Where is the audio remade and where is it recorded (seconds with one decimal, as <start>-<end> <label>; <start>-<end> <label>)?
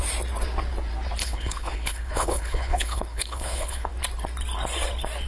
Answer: 0.0-1.2 recorded; 1.2-3.9 remade; 3.9-5.3 recorded